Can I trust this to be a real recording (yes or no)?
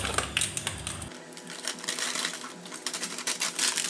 yes